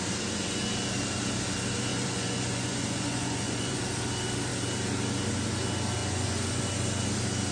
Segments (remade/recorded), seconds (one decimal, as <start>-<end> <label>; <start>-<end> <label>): 0.0-1.9 recorded; 1.9-3.8 remade; 3.8-6.0 recorded; 6.0-6.6 remade; 6.6-7.5 recorded